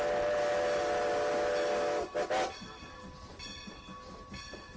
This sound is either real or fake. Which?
real